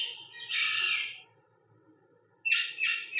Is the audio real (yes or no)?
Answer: yes